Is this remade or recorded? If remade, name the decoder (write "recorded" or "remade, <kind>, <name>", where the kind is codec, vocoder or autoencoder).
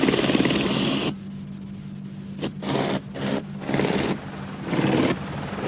recorded